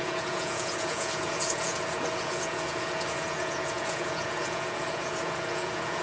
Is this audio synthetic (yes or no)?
yes